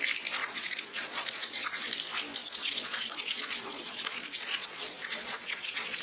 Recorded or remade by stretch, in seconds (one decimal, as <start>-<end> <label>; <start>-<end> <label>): 0.0-0.4 recorded; 0.4-1.9 remade; 1.9-2.4 recorded; 2.4-6.0 remade